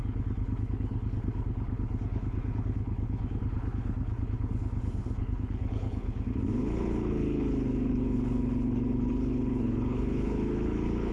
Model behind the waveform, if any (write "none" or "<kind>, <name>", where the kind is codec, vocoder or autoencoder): codec, HILCodec